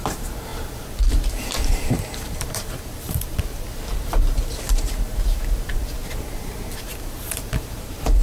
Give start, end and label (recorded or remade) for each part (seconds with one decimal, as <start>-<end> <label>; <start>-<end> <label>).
0.0-8.2 remade